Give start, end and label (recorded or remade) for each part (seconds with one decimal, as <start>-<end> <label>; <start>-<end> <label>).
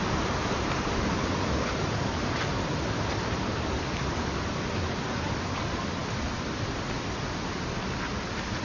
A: 0.0-8.6 recorded